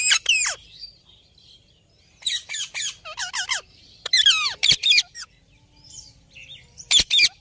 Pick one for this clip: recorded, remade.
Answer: remade